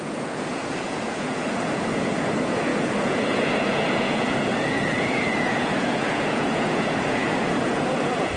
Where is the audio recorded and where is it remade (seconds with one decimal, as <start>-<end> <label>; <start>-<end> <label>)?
0.0-8.4 remade